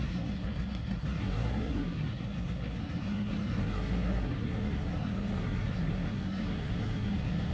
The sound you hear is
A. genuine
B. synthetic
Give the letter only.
B